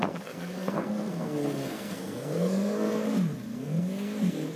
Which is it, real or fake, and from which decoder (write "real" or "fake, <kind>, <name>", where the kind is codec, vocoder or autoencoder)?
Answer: fake, codec, SNAC